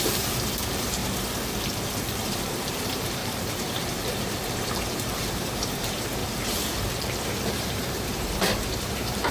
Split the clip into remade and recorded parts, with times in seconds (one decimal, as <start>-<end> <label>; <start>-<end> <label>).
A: 0.0-1.0 remade; 1.0-1.6 recorded; 1.6-9.3 remade